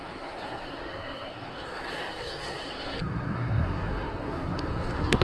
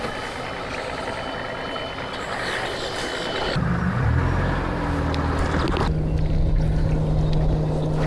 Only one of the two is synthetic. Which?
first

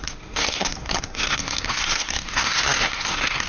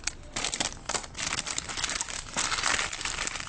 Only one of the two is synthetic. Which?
first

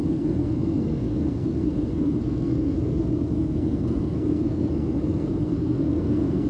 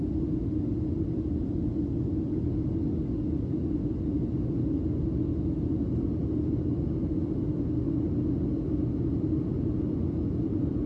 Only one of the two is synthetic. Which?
first